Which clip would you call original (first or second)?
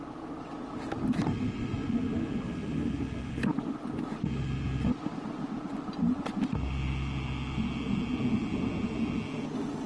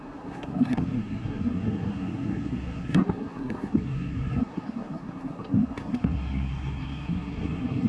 first